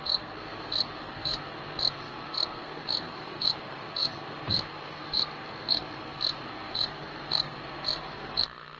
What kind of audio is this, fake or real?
fake